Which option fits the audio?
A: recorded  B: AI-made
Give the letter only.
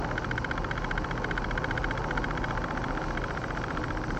A